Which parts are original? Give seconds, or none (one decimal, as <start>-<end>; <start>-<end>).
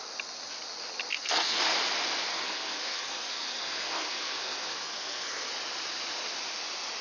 0.0-1.1; 1.6-2.3; 5.5-7.0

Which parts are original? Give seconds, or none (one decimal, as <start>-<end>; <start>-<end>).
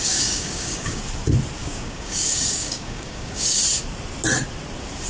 1.0-1.6; 3.6-5.1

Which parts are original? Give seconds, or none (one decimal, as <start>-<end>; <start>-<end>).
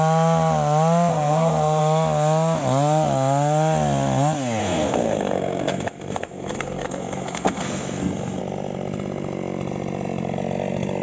0.0-1.1; 1.8-4.6; 8.4-11.0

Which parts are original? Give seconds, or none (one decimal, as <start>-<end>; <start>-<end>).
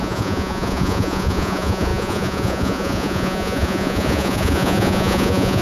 none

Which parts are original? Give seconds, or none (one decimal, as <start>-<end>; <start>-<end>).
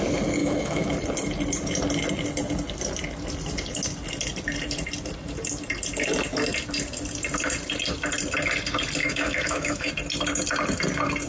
0.0-0.4; 0.9-9.0; 9.9-11.3